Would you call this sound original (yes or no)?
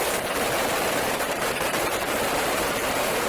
no